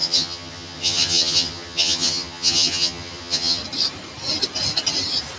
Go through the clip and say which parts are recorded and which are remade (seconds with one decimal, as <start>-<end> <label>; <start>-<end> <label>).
0.0-3.6 remade; 3.6-5.4 recorded